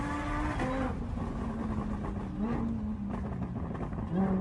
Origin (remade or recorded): recorded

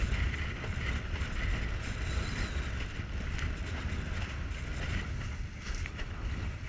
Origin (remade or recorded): recorded